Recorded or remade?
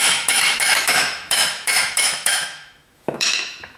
remade